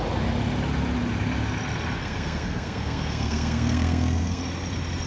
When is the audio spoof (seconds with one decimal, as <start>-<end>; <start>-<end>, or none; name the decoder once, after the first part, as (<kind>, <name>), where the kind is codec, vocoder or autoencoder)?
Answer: 2.0-4.4 (codec, SNAC)